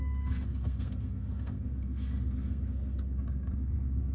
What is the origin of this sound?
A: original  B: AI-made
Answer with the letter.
B